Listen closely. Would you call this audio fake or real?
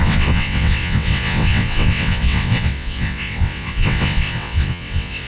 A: fake